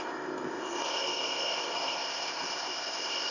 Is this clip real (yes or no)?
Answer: no